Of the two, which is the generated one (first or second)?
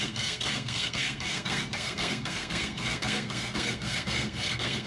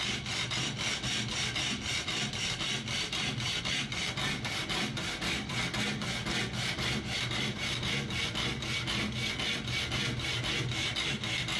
first